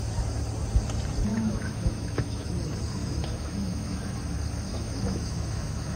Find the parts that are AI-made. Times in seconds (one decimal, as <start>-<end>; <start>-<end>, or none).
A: 1.3-2.5; 3.0-4.2; 4.7-6.0